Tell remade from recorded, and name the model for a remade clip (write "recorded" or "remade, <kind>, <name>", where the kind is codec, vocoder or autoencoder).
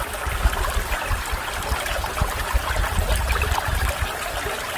recorded